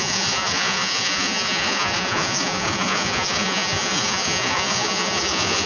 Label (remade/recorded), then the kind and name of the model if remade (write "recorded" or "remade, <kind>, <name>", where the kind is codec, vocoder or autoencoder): remade, vocoder, Vocos